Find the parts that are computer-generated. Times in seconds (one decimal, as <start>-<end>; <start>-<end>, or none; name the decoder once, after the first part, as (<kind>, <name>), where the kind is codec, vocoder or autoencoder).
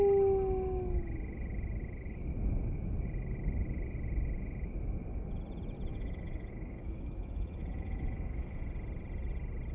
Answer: 5.9-8.6 (autoencoder, DAC-VAE)